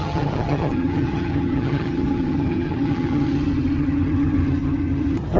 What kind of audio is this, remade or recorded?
remade